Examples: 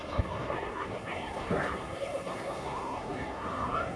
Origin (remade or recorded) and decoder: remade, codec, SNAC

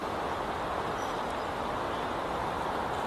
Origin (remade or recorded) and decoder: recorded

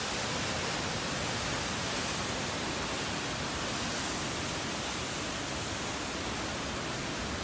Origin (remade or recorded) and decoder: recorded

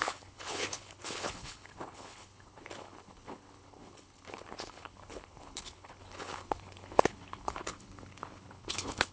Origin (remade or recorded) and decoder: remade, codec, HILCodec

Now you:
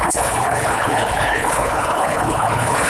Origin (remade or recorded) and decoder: remade, codec, HILCodec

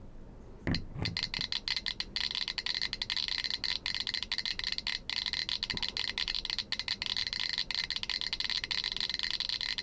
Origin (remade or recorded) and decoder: recorded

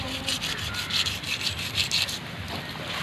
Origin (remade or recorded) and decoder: recorded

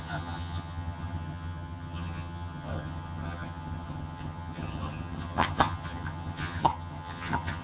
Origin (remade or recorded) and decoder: remade, vocoder, HiFi-GAN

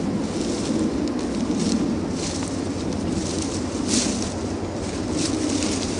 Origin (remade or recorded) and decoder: recorded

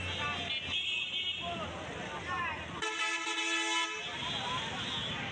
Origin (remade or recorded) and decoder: recorded